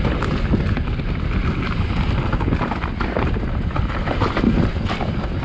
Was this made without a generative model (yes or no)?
yes